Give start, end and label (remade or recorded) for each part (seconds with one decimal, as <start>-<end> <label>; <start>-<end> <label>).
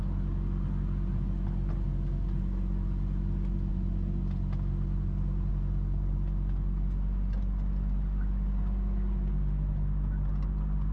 0.0-3.7 recorded; 3.7-5.5 remade; 5.5-10.9 recorded